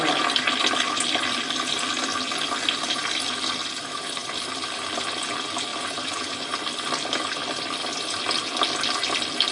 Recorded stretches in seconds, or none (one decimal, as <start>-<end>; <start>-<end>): 0.0-3.0; 3.5-4.2; 5.3-5.7; 8.2-9.5